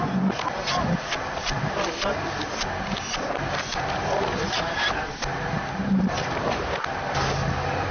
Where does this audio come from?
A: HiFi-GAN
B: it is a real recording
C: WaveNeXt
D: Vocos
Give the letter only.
B